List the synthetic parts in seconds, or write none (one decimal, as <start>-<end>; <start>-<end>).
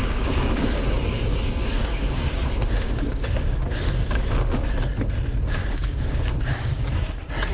0.0-4.2; 5.6-7.1